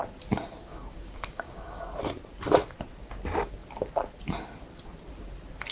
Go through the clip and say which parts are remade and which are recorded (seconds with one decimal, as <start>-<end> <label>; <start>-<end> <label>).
0.0-0.7 recorded; 0.7-1.9 remade; 1.9-5.7 recorded